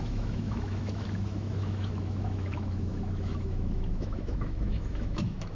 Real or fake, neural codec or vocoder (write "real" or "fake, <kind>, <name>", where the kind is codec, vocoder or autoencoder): fake, autoencoder, DAC-VAE